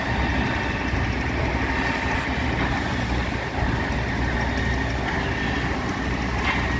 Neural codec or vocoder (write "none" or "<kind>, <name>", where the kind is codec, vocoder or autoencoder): none